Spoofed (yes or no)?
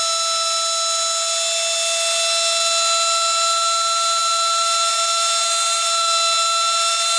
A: no